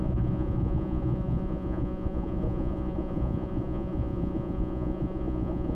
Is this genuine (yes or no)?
no